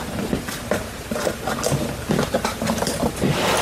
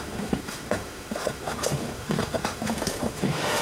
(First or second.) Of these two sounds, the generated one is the second